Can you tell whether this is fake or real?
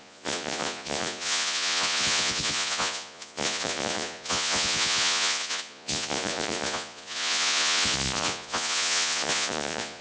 fake